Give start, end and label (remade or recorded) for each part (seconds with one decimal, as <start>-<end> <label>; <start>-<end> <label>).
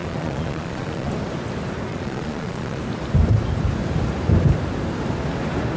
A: 0.0-1.1 remade; 1.1-1.9 recorded; 1.9-2.8 remade; 2.8-5.8 recorded